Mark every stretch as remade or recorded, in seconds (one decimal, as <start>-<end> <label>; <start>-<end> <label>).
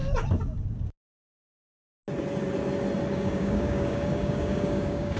0.0-3.1 recorded; 3.1-5.2 remade